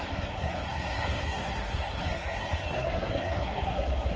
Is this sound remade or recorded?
remade